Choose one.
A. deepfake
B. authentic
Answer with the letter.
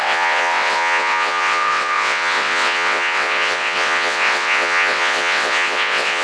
A